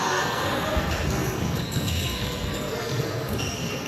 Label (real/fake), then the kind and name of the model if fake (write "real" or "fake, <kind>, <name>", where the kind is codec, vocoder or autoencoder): fake, codec, SNAC